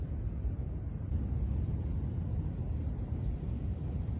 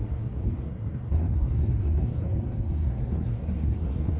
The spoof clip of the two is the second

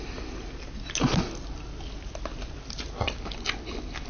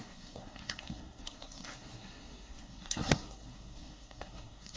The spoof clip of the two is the second